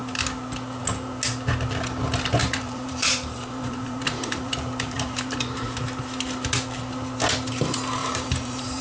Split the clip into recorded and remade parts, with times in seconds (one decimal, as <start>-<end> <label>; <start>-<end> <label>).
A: 0.0-2.4 recorded; 2.4-5.8 remade; 5.8-8.0 recorded; 8.0-8.8 remade